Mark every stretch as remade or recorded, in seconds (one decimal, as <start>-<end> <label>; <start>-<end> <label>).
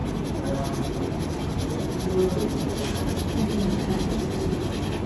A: 0.0-5.1 recorded